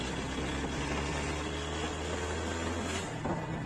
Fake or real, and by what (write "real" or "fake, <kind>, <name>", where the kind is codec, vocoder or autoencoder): real